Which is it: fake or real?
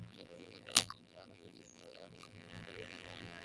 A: fake